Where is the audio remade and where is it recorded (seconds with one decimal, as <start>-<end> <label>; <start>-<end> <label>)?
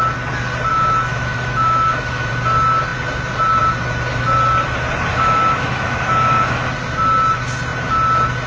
0.0-0.7 recorded; 0.7-2.3 remade; 2.3-5.1 recorded; 5.1-6.7 remade; 6.7-8.5 recorded